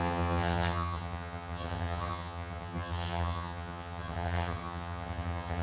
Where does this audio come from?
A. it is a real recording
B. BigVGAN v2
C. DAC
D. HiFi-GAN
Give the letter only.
D